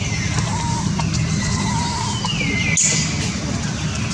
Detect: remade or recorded recorded